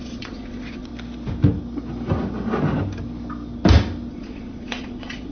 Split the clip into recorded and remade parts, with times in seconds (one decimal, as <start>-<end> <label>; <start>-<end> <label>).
0.0-0.9 remade; 0.9-4.1 recorded; 4.1-5.3 remade